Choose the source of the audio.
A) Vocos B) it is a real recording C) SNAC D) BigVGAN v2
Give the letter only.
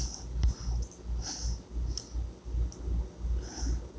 B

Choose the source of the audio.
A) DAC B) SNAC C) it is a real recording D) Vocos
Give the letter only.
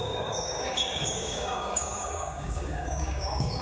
A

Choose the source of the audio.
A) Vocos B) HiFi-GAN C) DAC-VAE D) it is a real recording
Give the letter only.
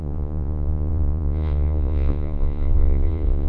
A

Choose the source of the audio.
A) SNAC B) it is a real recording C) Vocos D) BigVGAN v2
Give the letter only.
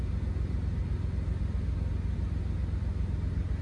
B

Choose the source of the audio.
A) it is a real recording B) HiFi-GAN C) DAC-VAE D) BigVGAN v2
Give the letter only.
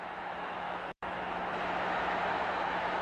C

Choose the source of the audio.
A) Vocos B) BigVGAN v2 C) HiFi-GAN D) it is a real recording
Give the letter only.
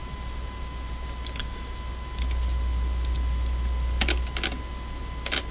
D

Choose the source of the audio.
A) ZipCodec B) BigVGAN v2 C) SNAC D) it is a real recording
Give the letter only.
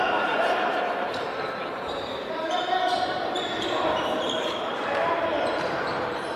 B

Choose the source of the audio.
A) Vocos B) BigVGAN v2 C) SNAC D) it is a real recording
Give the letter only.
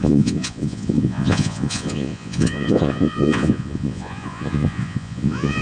A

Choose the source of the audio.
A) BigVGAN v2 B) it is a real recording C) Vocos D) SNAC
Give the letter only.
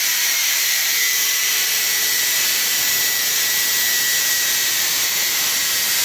A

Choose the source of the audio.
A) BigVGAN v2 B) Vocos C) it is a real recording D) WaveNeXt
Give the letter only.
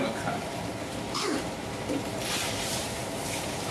A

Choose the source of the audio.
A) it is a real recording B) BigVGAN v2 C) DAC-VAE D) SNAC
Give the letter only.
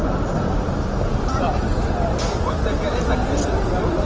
A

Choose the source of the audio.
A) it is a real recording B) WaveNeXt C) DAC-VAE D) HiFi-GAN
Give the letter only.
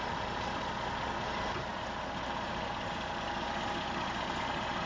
A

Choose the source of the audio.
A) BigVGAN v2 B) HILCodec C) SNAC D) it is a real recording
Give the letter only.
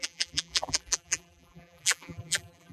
A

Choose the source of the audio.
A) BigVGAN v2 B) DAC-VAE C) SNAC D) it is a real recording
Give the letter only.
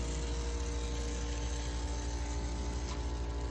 D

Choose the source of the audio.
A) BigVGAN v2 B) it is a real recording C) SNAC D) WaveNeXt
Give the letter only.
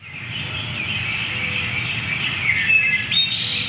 B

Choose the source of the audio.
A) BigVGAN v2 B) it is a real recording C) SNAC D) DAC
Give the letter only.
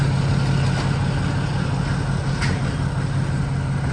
B